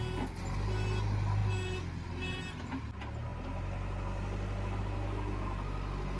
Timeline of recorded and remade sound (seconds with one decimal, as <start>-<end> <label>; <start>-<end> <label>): 0.0-6.2 recorded